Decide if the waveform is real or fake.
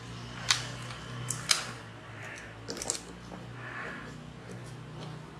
real